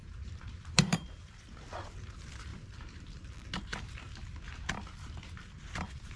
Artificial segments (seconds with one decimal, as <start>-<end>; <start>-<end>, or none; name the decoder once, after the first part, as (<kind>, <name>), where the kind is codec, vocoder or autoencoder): 0.0-1.2 (vocoder, BigVGAN v2); 2.5-3.3